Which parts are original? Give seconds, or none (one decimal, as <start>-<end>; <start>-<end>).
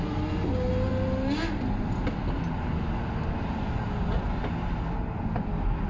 0.0-5.9